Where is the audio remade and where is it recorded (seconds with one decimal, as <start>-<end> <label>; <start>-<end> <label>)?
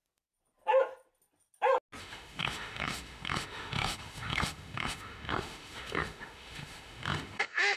0.0-2.0 recorded; 2.0-7.8 remade